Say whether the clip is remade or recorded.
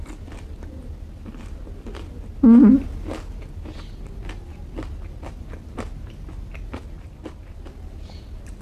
recorded